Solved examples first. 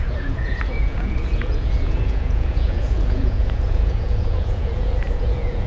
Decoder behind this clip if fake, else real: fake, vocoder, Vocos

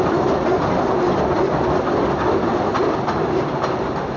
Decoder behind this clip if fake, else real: real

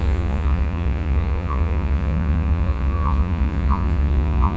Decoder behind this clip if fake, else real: fake, vocoder, Vocos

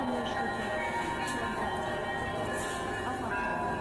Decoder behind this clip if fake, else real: fake, vocoder, Vocos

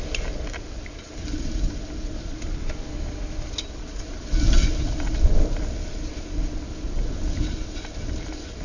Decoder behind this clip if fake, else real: real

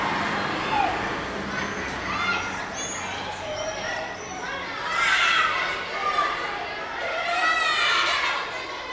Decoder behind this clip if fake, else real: real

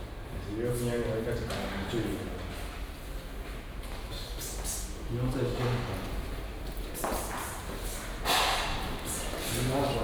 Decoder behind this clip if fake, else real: real